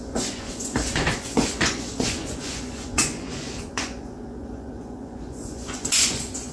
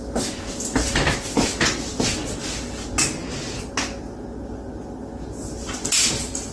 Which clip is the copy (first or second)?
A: first